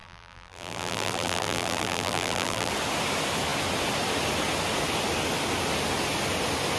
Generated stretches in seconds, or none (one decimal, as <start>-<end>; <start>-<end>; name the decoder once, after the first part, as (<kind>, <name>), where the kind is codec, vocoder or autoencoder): 0.0-2.7 (vocoder, BigVGAN v2)